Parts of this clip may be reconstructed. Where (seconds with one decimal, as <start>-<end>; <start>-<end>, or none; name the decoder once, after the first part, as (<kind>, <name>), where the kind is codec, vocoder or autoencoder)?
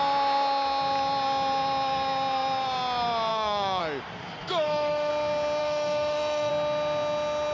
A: 3.3-3.8 (autoencoder, DAC-VAE); 4.4-5.1; 5.6-6.5